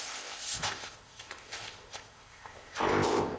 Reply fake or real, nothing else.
fake